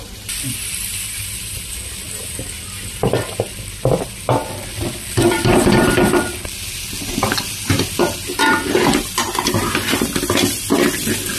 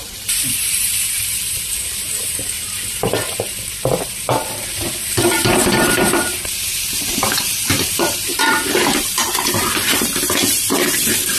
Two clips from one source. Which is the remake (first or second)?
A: second